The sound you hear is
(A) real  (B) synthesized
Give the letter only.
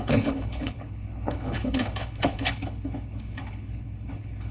B